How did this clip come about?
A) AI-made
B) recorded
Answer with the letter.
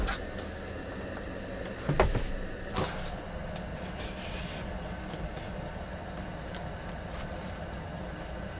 B